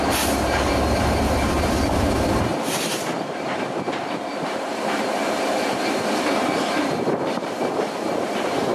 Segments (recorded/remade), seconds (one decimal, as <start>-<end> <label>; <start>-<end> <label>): 0.0-8.7 remade